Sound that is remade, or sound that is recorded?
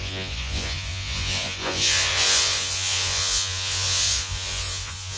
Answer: remade